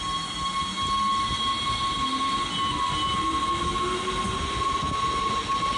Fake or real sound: real